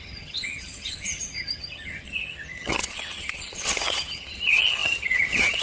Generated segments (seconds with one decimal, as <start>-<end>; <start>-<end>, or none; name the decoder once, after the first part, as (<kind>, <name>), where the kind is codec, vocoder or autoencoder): 0.0-5.6 (vocoder, HiFi-GAN)